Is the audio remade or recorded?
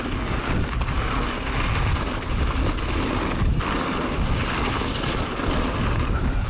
recorded